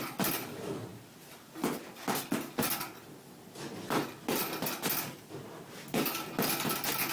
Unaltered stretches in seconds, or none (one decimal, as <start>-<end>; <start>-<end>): 0.0-7.1